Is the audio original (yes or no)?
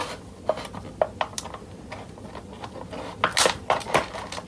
yes